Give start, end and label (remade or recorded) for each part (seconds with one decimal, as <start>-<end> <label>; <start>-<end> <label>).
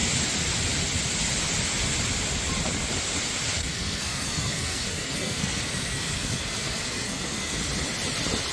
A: 0.0-3.6 recorded; 3.6-7.6 remade; 7.6-8.5 recorded